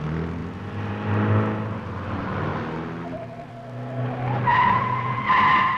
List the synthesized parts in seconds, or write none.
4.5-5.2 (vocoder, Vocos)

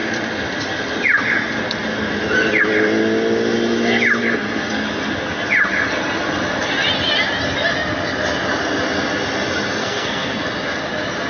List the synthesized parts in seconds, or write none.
9.8-10.4 (codec, SNAC)